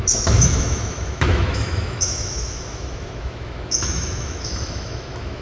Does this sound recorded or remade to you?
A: remade